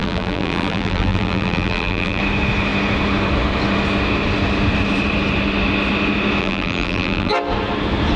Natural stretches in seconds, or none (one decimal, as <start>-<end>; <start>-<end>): 2.2-6.4; 7.3-8.2